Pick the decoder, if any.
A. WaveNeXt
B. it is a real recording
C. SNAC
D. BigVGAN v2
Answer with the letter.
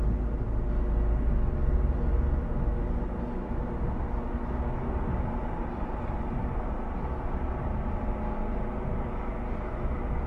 B